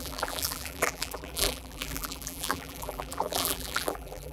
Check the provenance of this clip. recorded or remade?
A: remade